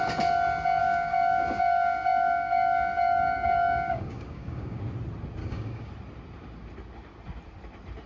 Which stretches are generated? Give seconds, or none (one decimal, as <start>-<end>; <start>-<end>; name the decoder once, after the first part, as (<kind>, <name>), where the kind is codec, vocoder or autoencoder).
0.8-4.8 (codec, DAC); 5.4-5.9